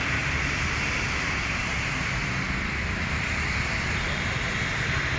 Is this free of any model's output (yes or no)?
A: yes